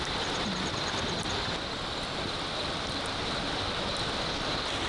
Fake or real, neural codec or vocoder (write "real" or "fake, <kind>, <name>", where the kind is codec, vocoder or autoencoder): real